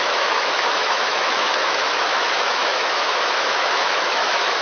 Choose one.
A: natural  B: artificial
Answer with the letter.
B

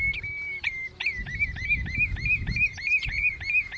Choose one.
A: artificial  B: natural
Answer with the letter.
B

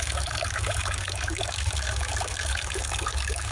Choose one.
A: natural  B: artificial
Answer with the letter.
B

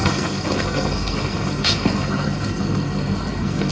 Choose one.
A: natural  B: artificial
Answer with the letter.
B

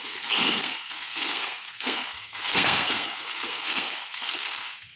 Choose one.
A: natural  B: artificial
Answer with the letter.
B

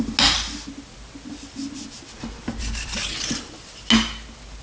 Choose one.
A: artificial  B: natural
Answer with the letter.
B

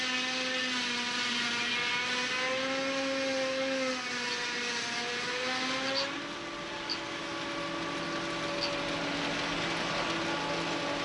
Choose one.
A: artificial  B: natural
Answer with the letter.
B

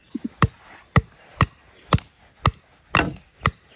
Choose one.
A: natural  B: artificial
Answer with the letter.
A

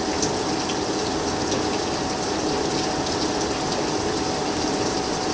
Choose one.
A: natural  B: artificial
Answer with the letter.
A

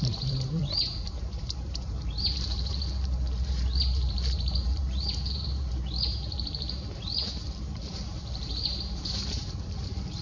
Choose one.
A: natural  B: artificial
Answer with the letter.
B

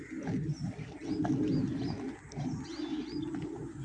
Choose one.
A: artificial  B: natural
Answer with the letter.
B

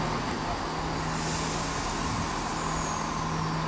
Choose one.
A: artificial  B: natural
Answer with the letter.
B